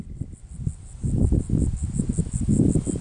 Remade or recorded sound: recorded